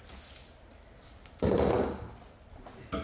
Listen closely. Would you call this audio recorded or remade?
recorded